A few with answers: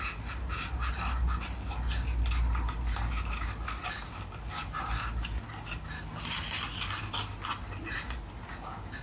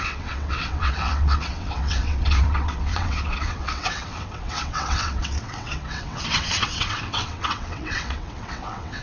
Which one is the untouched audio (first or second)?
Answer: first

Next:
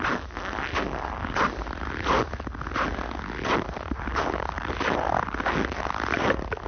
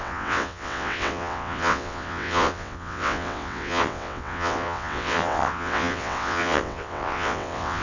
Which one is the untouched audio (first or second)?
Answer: first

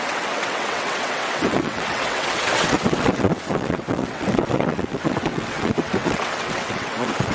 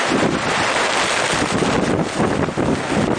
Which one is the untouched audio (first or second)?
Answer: second